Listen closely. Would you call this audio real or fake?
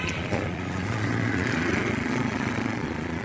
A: fake